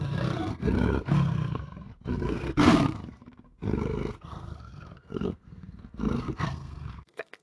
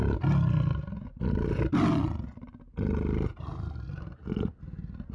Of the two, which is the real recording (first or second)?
second